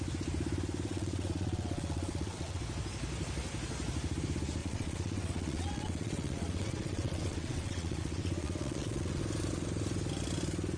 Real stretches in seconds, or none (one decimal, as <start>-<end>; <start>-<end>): 0.0-0.9; 2.6-4.6; 9.2-10.8